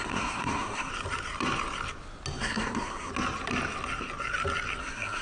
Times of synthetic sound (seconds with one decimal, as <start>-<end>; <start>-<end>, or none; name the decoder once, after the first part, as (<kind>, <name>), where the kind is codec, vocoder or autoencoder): 0.0-0.9 (codec, SNAC); 2.4-3.1; 4.8-5.2